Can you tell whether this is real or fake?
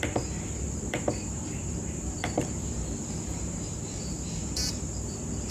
fake